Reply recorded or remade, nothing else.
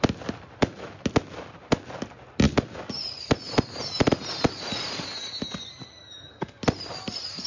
recorded